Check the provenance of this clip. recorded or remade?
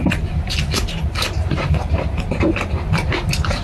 remade